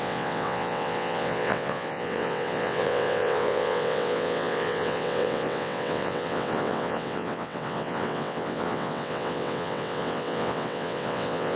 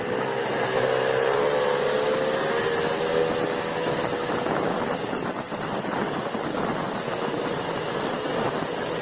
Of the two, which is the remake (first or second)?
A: first